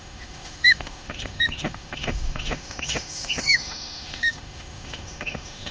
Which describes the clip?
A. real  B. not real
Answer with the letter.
B